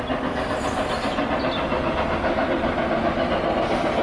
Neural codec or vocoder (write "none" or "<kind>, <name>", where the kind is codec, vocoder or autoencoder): none